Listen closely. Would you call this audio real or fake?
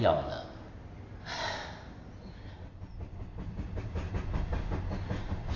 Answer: real